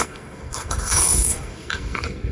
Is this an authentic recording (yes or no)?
no